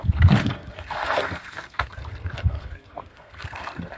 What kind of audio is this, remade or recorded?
remade